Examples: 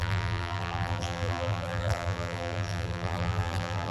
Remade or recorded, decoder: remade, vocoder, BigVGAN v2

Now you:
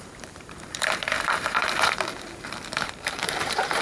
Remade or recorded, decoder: remade, vocoder, BigVGAN v2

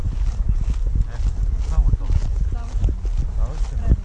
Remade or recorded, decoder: recorded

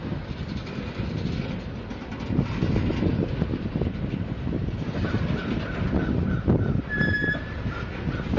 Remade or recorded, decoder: recorded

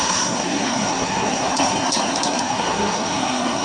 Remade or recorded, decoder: remade, codec, SNAC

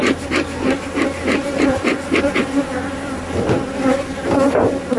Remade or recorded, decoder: recorded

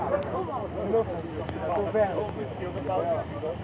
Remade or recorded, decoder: recorded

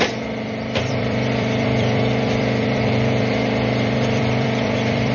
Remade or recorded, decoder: remade, vocoder, BigVGAN v2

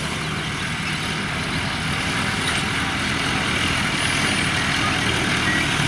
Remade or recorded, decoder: recorded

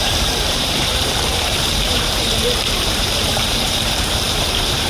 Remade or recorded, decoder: remade, vocoder, BigVGAN v2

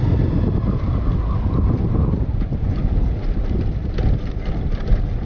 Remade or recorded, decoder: recorded